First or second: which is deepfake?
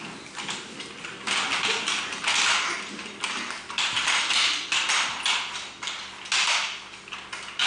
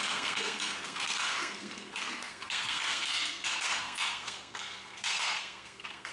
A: second